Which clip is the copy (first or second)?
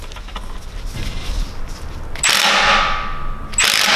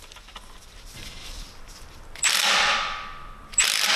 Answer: second